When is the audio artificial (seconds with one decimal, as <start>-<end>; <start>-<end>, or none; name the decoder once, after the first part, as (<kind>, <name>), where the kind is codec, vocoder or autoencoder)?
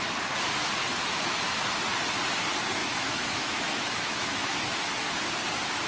1.0-1.7 (autoencoder, DAC-VAE); 2.8-4.7